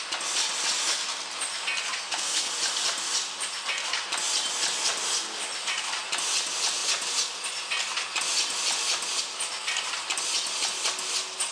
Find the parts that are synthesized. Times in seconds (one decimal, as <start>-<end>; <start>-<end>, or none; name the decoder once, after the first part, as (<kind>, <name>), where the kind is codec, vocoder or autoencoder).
2.0-2.5 (codec, SNAC)